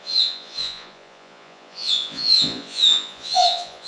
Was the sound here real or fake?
fake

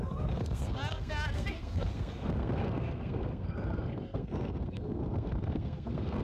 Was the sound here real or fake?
fake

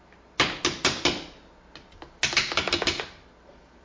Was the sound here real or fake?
real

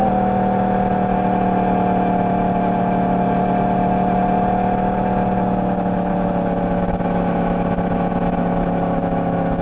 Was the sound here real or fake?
real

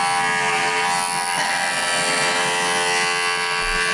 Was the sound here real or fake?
real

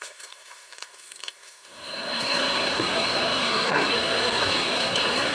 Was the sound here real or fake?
fake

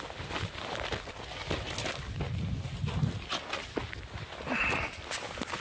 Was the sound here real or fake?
real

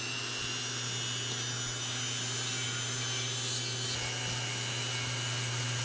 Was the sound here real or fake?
real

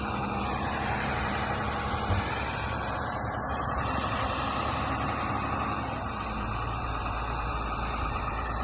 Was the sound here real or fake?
fake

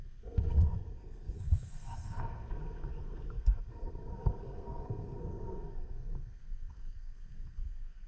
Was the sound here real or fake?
fake